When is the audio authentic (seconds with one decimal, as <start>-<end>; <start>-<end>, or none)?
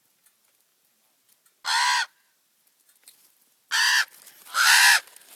0.0-5.4